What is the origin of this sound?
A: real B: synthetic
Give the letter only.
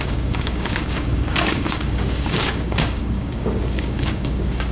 B